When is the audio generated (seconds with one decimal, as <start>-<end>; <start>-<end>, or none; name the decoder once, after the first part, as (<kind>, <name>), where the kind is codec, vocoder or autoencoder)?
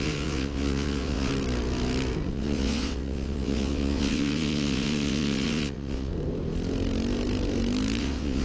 0.0-1.3 (vocoder, WaveNeXt); 2.3-6.1; 8.0-8.4